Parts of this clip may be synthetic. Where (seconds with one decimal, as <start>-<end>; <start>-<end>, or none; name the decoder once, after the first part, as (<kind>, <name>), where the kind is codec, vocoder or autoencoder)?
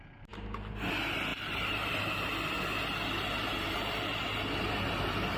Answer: 1.3-2.1 (vocoder, BigVGAN v2); 3.5-4.4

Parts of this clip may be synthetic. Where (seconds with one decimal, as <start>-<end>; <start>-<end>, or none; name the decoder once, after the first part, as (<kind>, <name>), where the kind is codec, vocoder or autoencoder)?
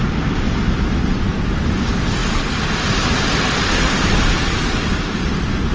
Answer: none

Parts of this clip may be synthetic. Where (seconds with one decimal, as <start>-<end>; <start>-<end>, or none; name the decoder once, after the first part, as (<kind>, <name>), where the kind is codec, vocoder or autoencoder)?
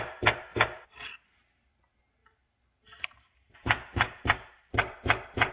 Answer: 2.2-5.5 (vocoder, BigVGAN v2)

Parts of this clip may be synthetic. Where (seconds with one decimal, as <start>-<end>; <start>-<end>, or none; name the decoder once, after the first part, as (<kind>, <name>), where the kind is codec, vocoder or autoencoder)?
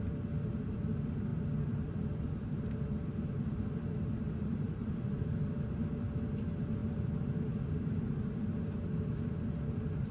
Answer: 6.8-7.9 (vocoder, BigVGAN v2)